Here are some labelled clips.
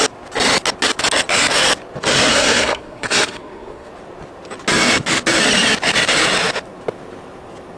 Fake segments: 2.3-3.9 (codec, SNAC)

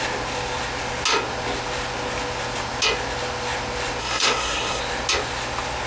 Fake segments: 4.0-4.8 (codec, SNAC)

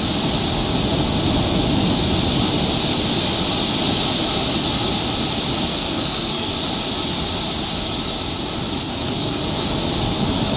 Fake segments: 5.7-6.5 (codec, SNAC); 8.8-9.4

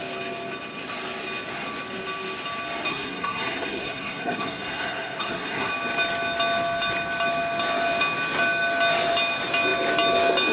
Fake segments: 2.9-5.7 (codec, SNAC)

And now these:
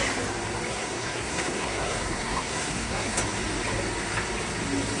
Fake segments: 0.7-3.2 (codec, SNAC)